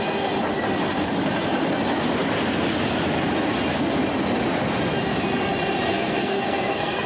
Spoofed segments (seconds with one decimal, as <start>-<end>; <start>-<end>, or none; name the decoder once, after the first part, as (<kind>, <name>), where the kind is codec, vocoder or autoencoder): 5.9-7.1 (codec, SNAC)